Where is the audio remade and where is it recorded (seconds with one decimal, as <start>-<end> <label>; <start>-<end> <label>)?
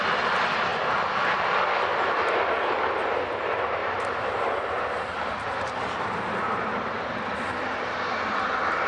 0.0-3.8 recorded; 3.8-7.8 remade; 7.8-8.9 recorded